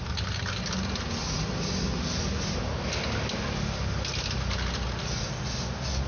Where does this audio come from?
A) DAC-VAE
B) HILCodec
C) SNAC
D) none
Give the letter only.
D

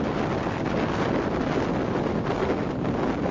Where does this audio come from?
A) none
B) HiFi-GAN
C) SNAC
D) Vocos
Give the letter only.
A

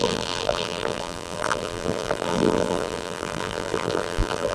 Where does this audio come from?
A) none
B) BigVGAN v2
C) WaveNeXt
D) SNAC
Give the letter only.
B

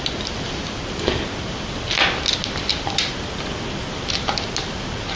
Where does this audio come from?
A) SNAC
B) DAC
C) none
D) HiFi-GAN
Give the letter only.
C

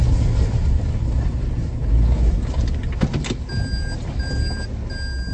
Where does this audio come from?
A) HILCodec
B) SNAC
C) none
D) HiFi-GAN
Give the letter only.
C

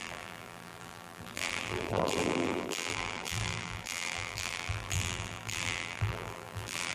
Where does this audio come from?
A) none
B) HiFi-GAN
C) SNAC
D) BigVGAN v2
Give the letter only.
D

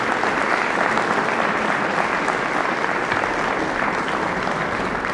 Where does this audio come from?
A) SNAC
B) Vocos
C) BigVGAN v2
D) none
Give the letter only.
D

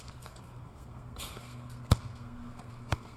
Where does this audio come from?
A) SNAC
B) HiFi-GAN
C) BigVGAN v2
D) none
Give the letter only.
A